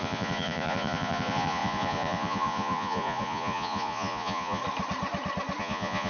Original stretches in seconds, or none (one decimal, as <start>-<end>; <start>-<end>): 4.6-5.6